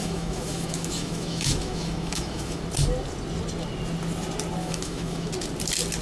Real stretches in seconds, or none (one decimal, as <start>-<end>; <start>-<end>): 2.6-4.6; 5.3-6.0